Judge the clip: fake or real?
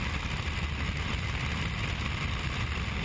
real